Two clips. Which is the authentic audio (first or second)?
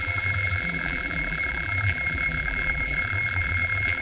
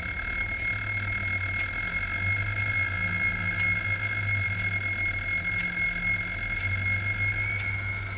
second